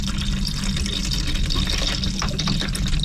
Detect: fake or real real